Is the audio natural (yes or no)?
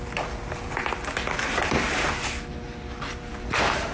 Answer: yes